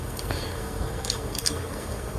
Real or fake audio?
fake